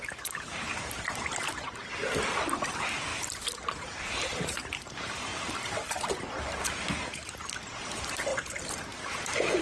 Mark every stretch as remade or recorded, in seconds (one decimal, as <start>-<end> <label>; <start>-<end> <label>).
0.0-2.1 remade; 2.1-2.7 recorded; 2.7-9.6 remade